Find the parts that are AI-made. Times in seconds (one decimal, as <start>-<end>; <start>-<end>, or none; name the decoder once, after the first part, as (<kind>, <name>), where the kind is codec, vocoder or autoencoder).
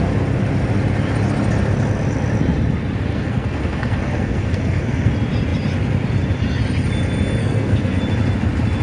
3.1-5.1 (codec, SNAC); 7.4-8.0